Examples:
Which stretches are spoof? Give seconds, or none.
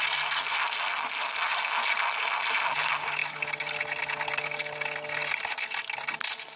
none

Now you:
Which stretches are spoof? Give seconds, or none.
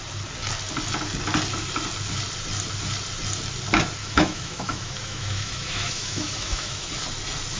4.0-6.9 (autoencoder, DAC-VAE)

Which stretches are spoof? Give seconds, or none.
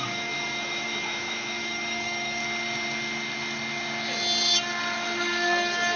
0.0-2.4 (autoencoder, DAC-VAE)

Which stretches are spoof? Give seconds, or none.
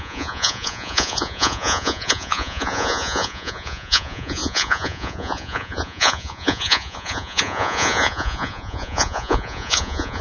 0.0-10.2 (vocoder, Vocos)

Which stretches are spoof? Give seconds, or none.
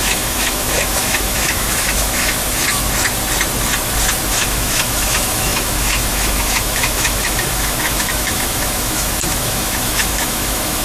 0.0-2.4 (autoencoder, DAC-VAE); 4.3-10.8